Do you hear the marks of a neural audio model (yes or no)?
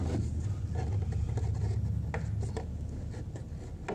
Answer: no